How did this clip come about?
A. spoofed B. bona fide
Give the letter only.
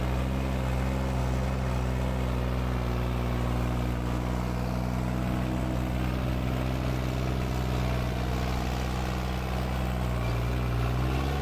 B